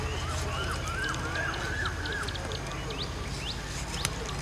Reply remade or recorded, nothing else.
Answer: recorded